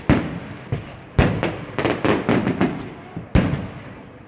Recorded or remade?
recorded